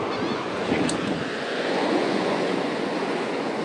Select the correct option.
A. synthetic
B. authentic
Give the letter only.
A